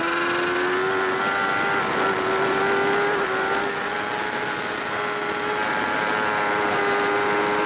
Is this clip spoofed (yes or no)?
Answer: no